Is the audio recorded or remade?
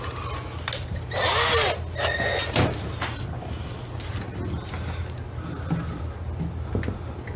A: recorded